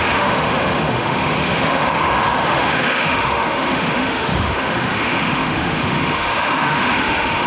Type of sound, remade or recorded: remade